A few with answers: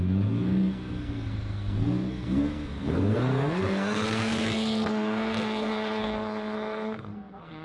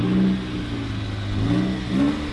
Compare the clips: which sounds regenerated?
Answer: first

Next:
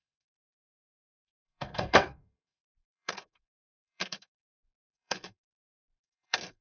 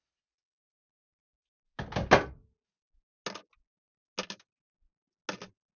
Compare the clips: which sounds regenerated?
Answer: first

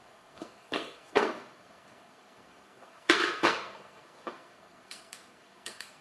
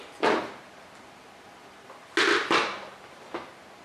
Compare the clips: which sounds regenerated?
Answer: first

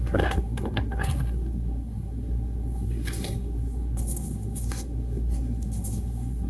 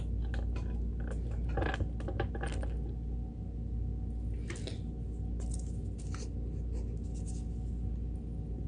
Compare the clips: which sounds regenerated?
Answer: first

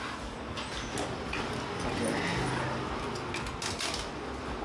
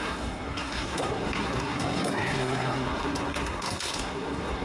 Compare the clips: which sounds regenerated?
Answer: second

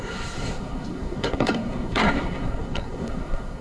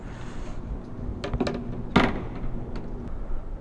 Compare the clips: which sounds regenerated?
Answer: first